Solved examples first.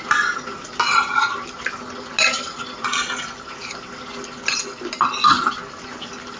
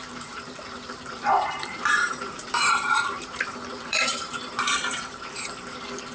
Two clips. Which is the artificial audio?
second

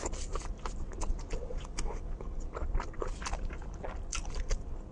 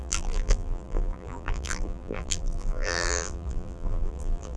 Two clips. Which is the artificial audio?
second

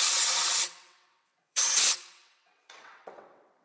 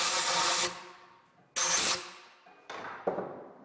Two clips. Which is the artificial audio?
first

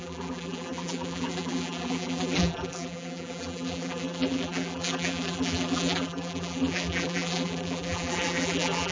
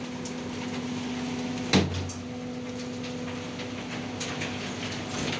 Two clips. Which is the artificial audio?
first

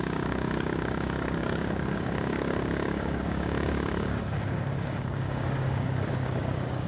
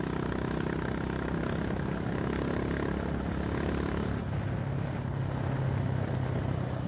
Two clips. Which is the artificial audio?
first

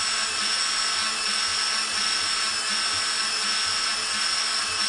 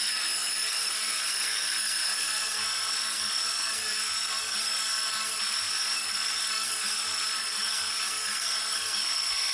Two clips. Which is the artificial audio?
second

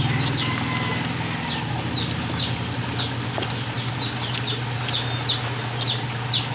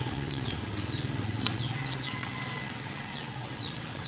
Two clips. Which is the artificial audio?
second